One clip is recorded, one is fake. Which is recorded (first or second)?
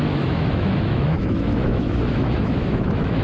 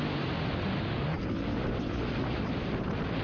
second